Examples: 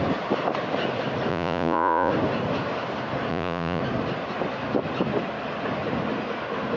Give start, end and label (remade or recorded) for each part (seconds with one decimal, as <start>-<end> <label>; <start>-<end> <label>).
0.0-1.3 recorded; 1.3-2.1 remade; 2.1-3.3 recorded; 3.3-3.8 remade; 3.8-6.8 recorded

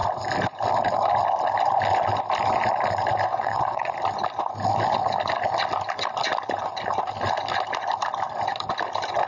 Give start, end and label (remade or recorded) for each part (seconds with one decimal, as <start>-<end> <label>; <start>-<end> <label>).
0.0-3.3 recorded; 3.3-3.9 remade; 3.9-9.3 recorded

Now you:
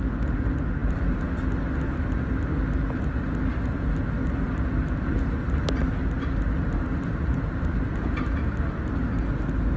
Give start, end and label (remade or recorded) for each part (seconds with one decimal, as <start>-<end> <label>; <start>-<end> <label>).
0.0-9.8 recorded

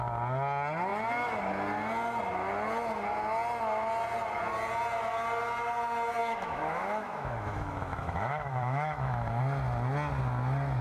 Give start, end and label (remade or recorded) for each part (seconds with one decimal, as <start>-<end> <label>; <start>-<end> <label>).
0.0-6.2 recorded; 6.2-9.4 remade; 9.4-10.8 recorded